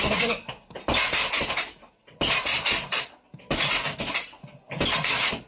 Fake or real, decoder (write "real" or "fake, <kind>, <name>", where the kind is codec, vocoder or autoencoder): real